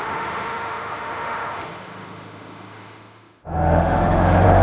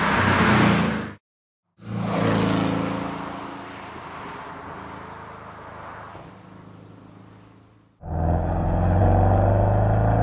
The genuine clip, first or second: second